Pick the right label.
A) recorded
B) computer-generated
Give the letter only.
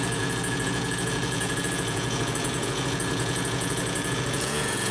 B